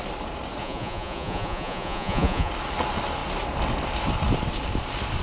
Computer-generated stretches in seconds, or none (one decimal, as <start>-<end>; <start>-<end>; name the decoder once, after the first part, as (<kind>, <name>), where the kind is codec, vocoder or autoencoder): 0.6-2.5 (vocoder, Vocos)